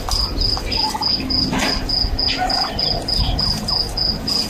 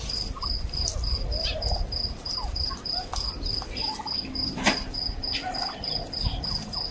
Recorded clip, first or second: first